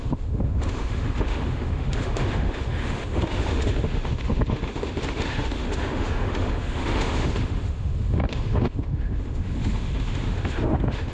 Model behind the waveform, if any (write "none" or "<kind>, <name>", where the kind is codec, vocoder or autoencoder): autoencoder, DAC-VAE